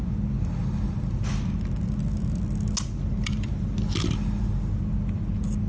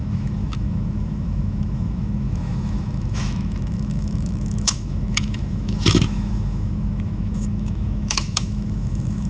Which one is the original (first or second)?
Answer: first